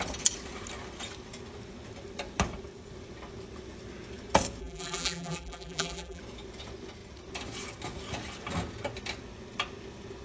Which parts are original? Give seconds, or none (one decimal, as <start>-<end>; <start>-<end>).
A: 0.0-4.6; 6.2-10.2